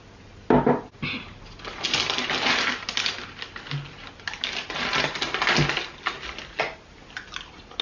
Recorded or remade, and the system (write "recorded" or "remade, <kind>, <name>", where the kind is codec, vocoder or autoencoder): recorded